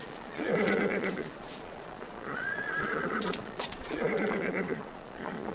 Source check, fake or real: fake